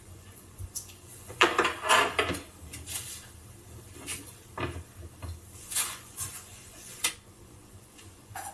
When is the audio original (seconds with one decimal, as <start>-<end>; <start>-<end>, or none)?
1.5-5.6